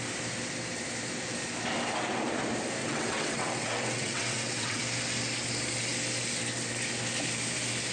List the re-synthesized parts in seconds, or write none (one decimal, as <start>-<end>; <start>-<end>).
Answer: 2.8-4.8